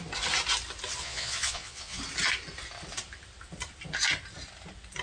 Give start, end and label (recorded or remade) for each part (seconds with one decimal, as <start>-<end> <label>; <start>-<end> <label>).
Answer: 0.0-1.0 recorded; 1.0-2.0 remade; 2.0-5.0 recorded